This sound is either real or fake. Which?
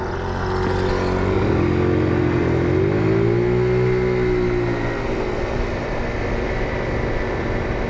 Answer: real